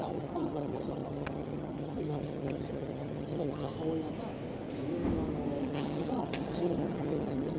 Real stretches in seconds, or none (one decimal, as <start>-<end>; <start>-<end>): 3.7-5.6